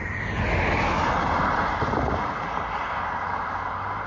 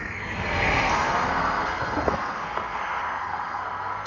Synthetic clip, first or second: second